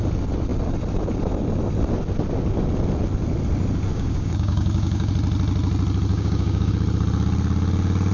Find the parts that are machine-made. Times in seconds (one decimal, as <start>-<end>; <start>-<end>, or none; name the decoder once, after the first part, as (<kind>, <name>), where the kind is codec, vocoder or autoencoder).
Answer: 3.9-5.1 (codec, DAC); 6.1-6.7